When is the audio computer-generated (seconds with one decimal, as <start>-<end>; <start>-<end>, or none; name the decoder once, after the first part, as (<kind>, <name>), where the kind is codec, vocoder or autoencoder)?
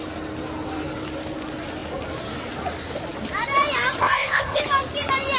4.0-4.6 (codec, ZipCodec)